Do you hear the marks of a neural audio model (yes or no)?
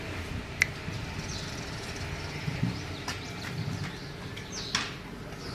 no